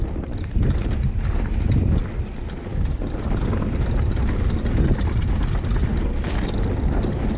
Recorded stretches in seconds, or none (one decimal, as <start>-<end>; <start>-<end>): 0.0-7.4